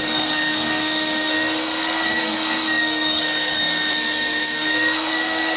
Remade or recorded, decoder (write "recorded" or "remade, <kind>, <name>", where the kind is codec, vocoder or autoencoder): remade, codec, SNAC